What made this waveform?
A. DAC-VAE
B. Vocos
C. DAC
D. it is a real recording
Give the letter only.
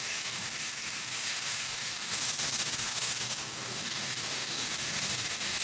C